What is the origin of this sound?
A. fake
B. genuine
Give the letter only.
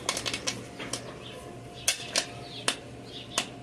B